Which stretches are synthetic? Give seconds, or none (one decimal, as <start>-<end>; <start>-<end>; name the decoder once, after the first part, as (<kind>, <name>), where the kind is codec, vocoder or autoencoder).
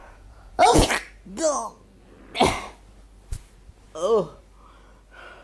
0.0-0.9 (vocoder, Vocos)